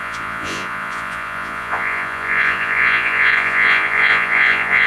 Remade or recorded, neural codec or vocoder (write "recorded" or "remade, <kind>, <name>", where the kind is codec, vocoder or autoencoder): remade, vocoder, Vocos